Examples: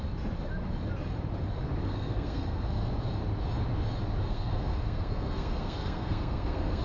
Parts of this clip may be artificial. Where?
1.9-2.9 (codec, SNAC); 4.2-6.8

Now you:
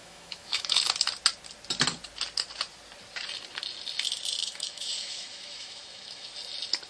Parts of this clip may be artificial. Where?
0.0-0.8 (autoencoder, DAC-VAE); 4.4-6.3